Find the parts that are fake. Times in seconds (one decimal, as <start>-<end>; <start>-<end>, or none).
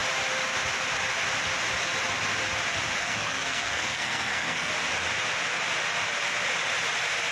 3.0-4.7